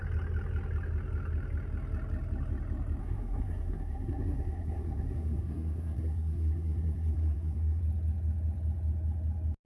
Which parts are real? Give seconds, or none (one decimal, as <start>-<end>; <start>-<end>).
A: 0.0-3.0; 7.8-9.7